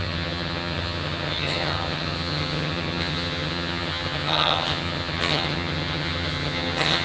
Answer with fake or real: fake